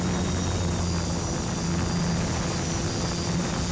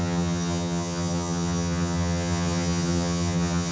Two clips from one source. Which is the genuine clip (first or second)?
first